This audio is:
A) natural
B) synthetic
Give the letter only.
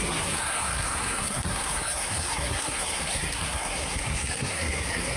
B